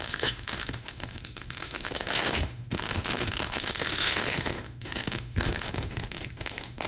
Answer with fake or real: fake